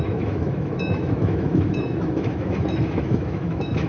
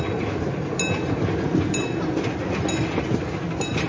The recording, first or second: second